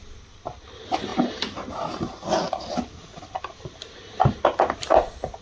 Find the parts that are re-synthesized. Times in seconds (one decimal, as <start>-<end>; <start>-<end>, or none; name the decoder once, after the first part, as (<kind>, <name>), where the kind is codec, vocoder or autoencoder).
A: none